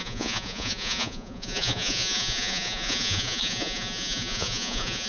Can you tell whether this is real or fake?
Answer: fake